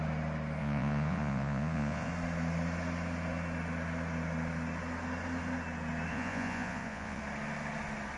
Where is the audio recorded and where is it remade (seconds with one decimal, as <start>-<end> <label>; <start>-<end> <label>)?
0.0-0.6 recorded; 0.6-2.1 remade; 2.1-6.1 recorded; 6.1-7.2 remade; 7.2-8.2 recorded